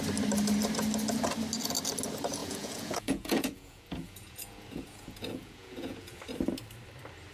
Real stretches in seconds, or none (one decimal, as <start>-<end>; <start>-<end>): 0.0-2.4; 6.2-7.3